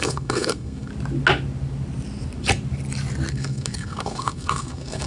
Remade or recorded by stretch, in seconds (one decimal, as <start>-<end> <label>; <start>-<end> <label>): 0.0-0.9 remade; 0.9-3.3 recorded; 3.3-5.1 remade